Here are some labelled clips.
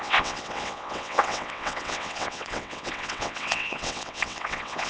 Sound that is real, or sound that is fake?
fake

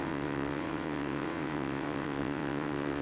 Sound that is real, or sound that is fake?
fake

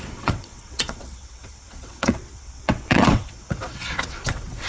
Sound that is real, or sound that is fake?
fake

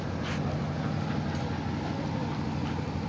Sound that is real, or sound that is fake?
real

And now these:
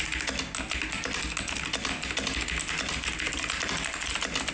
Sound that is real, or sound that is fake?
real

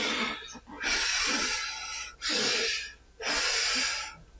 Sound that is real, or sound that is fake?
real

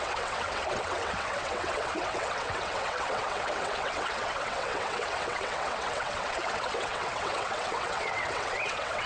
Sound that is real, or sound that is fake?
fake